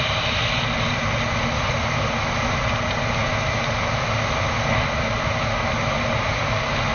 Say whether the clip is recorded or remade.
recorded